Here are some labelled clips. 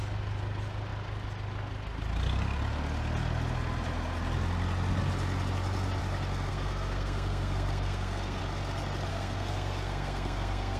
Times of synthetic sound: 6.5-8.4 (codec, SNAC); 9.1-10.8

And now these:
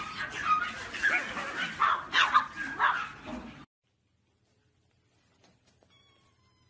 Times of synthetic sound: none

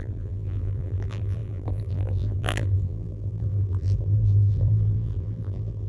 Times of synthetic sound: 0.0-5.9 (vocoder, BigVGAN v2)